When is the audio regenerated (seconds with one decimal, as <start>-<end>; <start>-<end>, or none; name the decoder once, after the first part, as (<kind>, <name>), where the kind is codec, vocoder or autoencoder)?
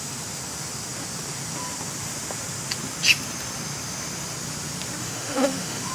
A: 5.0-5.9 (autoencoder, DAC-VAE)